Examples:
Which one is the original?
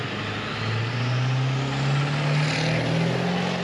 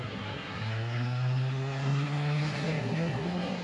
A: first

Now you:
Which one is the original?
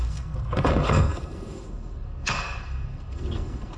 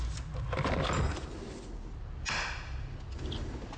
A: second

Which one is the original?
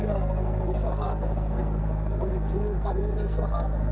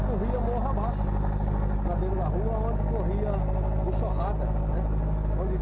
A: second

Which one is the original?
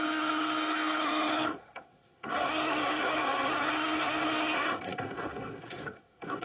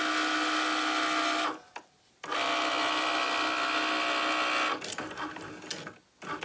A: second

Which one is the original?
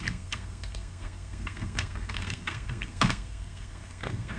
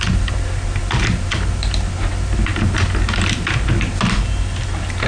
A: second